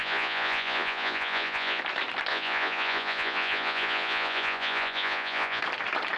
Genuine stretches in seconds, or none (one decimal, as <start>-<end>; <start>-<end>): 1.8-2.3; 5.6-6.2